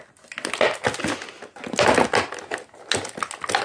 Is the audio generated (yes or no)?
no